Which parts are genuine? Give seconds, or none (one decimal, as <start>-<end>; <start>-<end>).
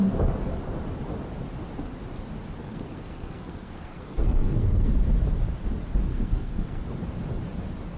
0.0-2.6; 4.9-6.1; 6.8-8.0